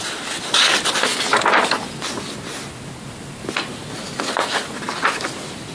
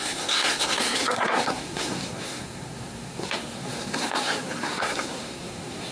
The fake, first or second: second